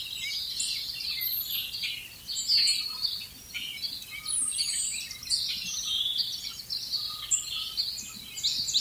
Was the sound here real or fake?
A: real